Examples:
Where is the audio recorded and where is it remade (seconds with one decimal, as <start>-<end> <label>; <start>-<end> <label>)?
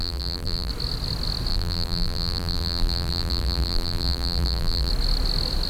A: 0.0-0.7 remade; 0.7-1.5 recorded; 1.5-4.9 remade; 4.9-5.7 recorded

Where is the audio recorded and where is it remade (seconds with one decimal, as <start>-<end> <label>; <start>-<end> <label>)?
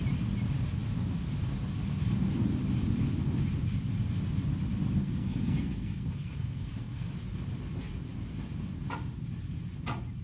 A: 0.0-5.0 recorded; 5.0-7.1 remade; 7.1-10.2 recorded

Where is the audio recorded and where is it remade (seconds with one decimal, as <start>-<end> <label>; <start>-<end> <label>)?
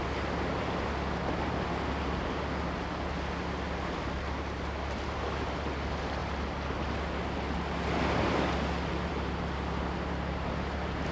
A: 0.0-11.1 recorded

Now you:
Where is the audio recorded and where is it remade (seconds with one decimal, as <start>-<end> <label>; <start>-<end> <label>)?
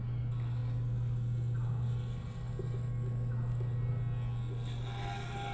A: 0.0-5.5 recorded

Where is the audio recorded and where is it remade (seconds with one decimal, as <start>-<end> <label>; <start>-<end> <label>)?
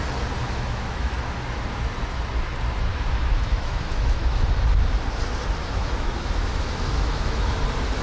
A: 0.0-0.4 recorded; 0.4-1.1 remade; 1.1-2.9 recorded; 2.9-4.5 remade; 4.5-5.6 recorded; 5.6-7.5 remade; 7.5-8.0 recorded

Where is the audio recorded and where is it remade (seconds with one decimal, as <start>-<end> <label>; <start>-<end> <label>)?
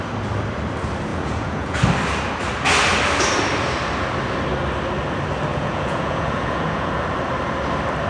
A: 0.0-1.1 recorded; 1.1-1.8 remade; 1.8-5.5 recorded; 5.5-6.9 remade; 6.9-8.1 recorded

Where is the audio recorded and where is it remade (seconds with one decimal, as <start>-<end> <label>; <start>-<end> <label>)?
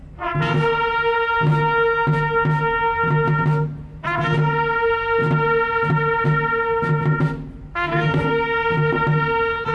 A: 0.0-7.7 recorded; 7.7-8.3 remade; 8.3-9.7 recorded